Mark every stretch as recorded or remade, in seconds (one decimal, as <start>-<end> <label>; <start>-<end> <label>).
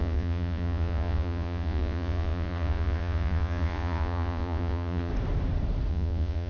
0.0-5.1 remade; 5.1-5.9 recorded; 5.9-6.5 remade